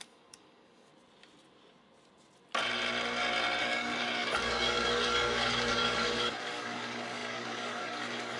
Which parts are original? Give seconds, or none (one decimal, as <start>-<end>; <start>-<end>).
0.9-3.6